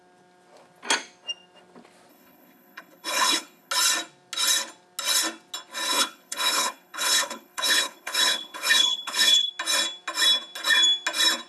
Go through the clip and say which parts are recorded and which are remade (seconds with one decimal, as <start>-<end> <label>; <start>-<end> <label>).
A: 0.0-2.1 recorded; 2.1-3.7 remade; 3.7-5.9 recorded; 5.9-9.5 remade; 9.5-11.5 recorded

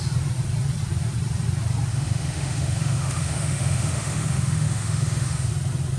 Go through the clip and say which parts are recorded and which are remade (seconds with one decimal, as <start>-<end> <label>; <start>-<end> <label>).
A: 0.0-1.9 recorded; 1.9-5.5 remade; 5.5-6.0 recorded

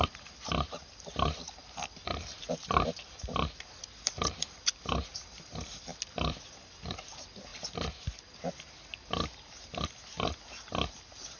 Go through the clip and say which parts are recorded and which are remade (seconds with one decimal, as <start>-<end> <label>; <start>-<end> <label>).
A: 0.0-11.4 recorded